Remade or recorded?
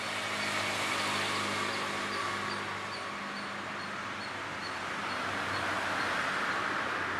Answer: recorded